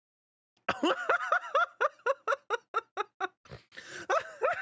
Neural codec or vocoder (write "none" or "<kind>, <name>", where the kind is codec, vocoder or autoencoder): none